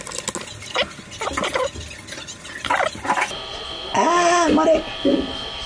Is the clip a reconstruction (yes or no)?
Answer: no